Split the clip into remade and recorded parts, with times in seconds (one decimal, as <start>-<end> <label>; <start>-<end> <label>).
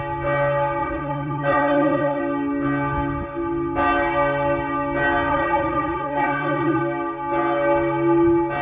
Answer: 0.0-0.8 recorded; 0.8-2.2 remade; 2.2-5.3 recorded; 5.3-6.8 remade; 6.8-8.6 recorded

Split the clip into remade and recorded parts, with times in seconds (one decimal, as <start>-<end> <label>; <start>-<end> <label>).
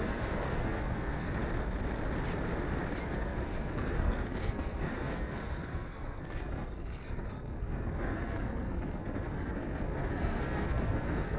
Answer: 0.0-1.4 remade; 1.4-3.0 recorded; 3.0-11.4 remade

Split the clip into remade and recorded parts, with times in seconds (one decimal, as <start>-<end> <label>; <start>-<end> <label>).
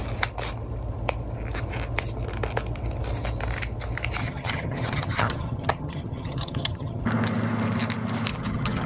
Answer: 0.0-4.2 recorded; 4.2-7.0 remade; 7.0-8.3 recorded; 8.3-8.9 remade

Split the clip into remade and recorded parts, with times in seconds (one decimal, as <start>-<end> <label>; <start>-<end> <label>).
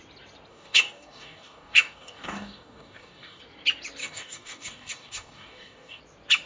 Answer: 0.0-0.5 recorded; 0.5-3.4 remade; 3.4-4.0 recorded; 4.0-6.0 remade; 6.0-6.5 recorded